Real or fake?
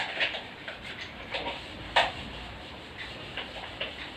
fake